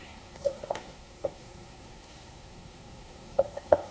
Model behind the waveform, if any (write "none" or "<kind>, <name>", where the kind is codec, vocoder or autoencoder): codec, SNAC